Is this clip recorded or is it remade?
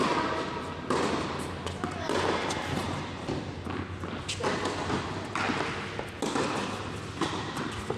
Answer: recorded